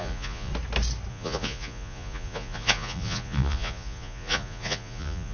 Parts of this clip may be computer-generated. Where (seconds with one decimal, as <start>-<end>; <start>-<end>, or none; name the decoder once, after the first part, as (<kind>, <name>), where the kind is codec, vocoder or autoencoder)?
0.0-0.5 (vocoder, Vocos); 1.1-5.3